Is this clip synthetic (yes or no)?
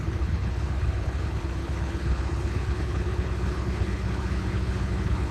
yes